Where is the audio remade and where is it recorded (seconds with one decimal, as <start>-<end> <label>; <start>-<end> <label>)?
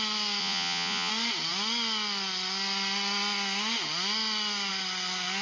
0.0-0.4 recorded; 0.4-1.1 remade; 1.1-5.4 recorded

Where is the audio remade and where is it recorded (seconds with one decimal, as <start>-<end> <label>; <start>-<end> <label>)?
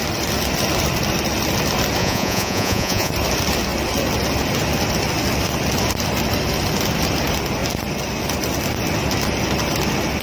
0.0-2.0 recorded; 2.0-3.1 remade; 3.1-10.2 recorded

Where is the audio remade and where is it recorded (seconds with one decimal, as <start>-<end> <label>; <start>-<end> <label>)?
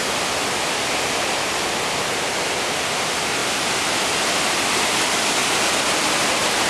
0.0-6.7 recorded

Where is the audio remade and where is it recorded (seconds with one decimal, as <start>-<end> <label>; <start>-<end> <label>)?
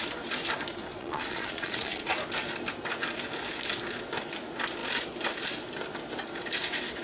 0.0-1.0 recorded; 1.0-2.0 remade; 2.0-7.0 recorded